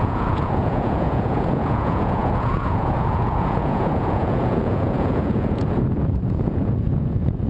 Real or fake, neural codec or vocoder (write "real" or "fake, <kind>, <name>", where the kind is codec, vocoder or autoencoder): fake, vocoder, Vocos